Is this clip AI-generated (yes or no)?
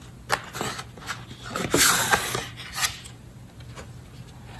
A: no